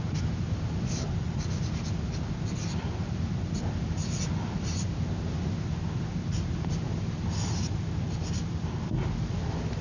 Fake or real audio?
real